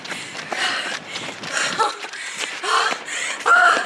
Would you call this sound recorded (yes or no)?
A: no